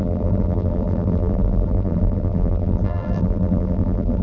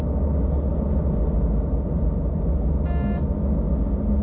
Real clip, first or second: second